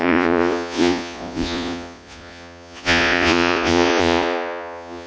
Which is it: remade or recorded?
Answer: remade